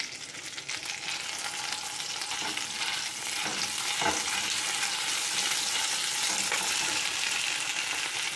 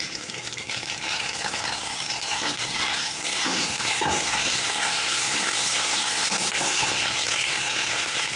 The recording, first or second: first